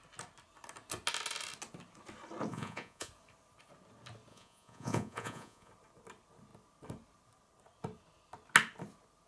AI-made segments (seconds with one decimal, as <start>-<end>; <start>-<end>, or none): 2.5-3.1; 4.3-5.7